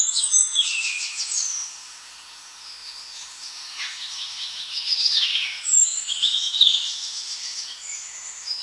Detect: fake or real fake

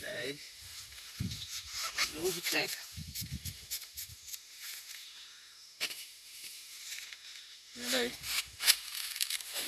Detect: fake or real fake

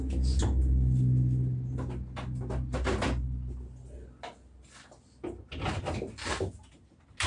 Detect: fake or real real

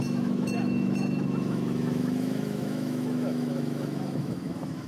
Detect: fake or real fake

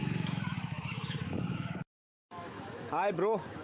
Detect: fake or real fake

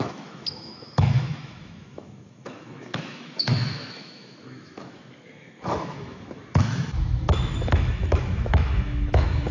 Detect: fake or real fake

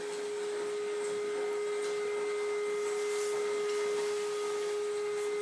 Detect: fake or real real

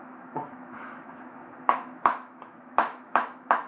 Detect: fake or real fake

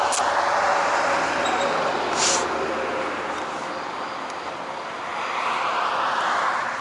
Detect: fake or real real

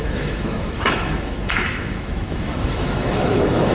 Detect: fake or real fake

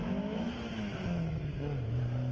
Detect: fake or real fake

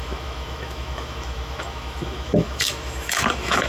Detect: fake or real fake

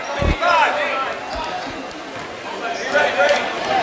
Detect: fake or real real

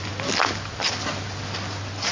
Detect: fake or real real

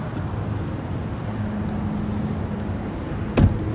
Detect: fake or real real